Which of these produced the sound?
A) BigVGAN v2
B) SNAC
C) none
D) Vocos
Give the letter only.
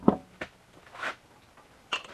C